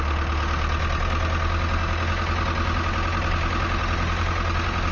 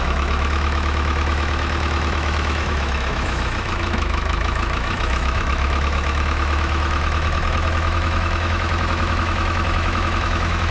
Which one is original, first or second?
first